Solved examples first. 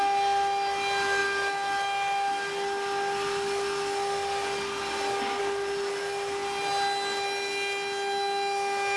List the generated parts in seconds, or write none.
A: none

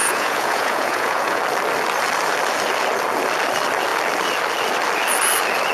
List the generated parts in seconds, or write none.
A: 0.0-1.4

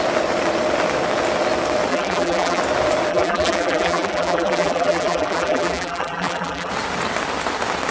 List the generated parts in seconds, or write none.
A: 1.9-2.6; 3.1-6.7

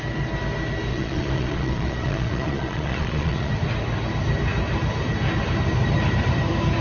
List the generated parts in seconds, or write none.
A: 0.9-3.5

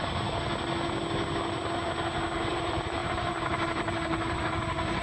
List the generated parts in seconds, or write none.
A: 0.0-0.5; 2.5-5.0

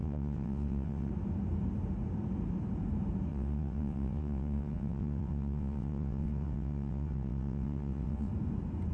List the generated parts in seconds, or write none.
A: 0.0-1.1; 3.3-8.3

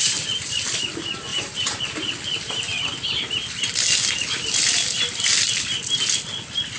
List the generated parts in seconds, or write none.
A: 1.3-1.8